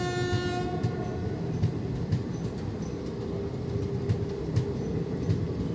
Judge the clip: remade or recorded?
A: recorded